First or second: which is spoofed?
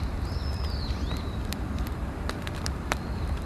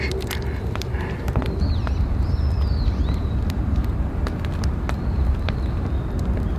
first